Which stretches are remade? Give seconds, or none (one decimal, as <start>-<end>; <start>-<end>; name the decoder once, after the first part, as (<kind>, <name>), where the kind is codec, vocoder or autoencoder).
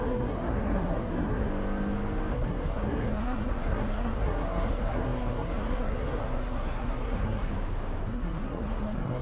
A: 0.0-1.5 (codec, SNAC); 2.3-7.5; 8.1-9.2